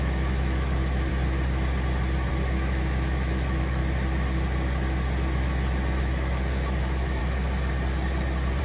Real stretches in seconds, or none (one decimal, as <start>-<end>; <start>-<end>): 1.1-2.3; 3.8-6.0; 7.2-8.6